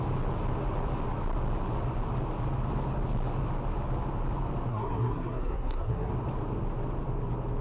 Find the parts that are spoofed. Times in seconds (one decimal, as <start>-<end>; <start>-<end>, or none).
4.7-6.1